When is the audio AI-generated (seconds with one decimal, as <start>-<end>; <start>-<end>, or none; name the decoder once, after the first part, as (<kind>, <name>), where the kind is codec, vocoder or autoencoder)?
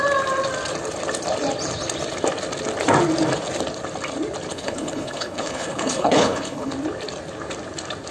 4.5-6.7 (codec, HILCodec)